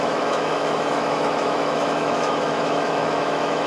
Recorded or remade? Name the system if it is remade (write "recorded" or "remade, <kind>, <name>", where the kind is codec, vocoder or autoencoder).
remade, autoencoder, DAC-VAE